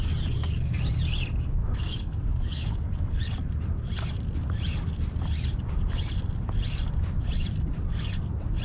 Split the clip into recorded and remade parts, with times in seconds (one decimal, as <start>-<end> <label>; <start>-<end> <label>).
0.0-1.6 recorded; 1.6-3.2 remade; 3.2-8.6 recorded